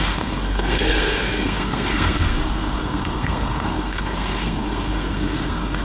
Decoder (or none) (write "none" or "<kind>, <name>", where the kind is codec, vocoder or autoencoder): codec, SNAC